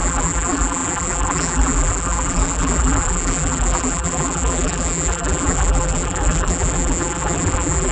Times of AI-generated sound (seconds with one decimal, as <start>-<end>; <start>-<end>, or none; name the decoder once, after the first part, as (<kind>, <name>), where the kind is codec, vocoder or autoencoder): 0.0-7.9 (vocoder, BigVGAN v2)